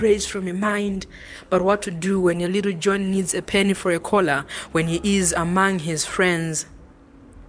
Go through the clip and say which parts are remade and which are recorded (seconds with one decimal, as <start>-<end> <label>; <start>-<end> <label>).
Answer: 0.0-4.5 remade; 4.5-7.5 recorded